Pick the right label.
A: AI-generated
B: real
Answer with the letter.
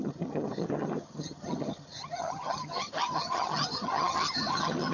A